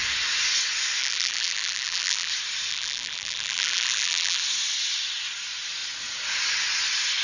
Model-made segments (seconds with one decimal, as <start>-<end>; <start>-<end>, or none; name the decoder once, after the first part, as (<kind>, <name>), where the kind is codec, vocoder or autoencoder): 1.0-2.3 (vocoder, BigVGAN v2); 2.7-4.4